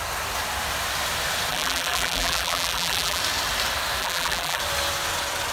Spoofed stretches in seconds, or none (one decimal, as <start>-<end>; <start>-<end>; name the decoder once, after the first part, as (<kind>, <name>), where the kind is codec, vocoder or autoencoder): 1.5-3.2 (vocoder, BigVGAN v2); 4.0-4.6